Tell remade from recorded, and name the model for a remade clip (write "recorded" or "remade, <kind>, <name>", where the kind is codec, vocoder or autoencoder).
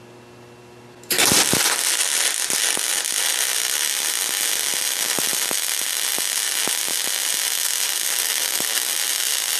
recorded